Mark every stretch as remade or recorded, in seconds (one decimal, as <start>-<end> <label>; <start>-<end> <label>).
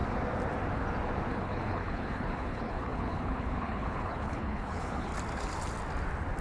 0.0-1.3 recorded; 1.3-5.1 remade; 5.1-6.4 recorded